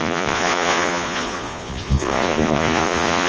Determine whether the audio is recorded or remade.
remade